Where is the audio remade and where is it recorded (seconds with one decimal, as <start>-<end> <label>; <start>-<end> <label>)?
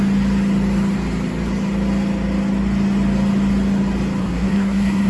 0.0-4.2 recorded; 4.2-5.1 remade